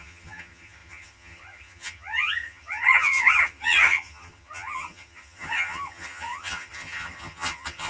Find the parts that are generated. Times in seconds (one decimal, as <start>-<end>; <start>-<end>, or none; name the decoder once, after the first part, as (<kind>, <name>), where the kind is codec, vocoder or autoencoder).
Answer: 0.0-7.9 (vocoder, HiFi-GAN)